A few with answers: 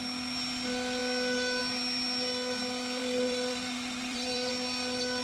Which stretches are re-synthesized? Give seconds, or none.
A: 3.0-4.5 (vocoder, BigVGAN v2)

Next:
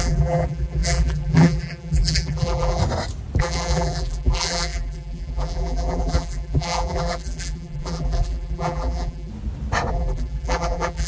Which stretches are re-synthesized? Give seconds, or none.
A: 0.0-2.8 (vocoder, BigVGAN v2); 3.4-9.3; 9.9-11.1

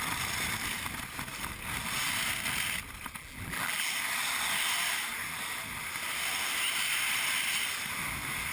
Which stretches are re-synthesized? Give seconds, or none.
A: 3.2-3.9 (vocoder, BigVGAN v2)

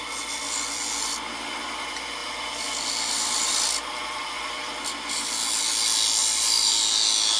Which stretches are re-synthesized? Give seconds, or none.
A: 2.2-2.8 (vocoder, BigVGAN v2); 3.5-4.0; 6.2-6.7